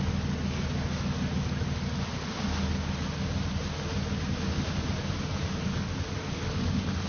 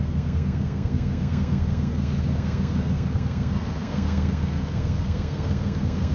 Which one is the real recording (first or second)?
first